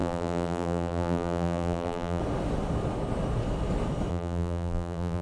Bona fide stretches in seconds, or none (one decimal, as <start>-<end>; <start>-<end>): 2.2-4.1